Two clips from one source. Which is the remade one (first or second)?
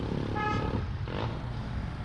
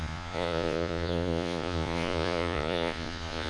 second